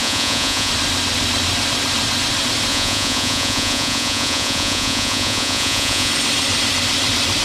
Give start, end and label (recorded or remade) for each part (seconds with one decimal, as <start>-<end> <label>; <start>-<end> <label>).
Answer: 0.0-0.7 remade; 0.7-2.7 recorded; 2.7-6.1 remade; 6.1-7.4 recorded